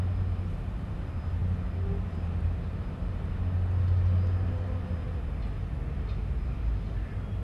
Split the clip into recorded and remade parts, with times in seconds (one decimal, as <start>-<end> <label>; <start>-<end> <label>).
0.0-7.4 recorded